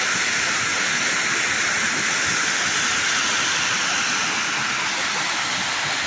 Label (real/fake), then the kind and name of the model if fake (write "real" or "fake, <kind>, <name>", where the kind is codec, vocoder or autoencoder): real